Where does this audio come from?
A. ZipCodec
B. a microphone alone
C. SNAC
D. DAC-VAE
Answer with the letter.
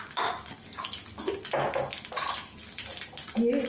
B